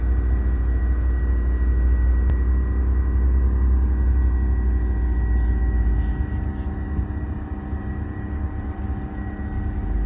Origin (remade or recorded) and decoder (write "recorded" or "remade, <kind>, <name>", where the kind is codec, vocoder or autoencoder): recorded